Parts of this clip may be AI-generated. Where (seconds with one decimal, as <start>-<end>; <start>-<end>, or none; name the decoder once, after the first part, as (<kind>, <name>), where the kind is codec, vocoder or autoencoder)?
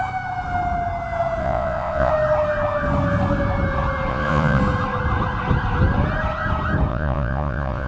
1.4-2.1 (vocoder, Vocos); 4.1-4.6; 6.9-7.9